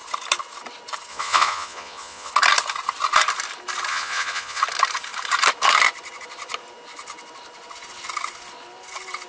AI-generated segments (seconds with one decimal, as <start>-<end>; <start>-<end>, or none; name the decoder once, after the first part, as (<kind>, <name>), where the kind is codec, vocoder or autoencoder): 1.1-2.3 (vocoder, Vocos); 3.9-4.6